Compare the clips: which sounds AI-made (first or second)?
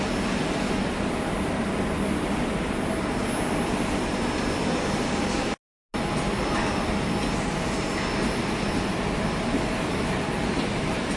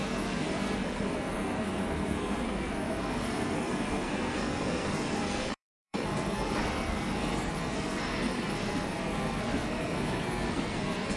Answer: second